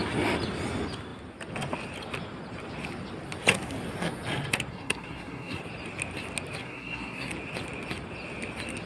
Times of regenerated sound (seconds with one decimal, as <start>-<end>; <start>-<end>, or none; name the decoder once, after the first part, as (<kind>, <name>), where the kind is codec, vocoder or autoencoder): 4.7-5.6 (codec, SNAC); 6.6-7.3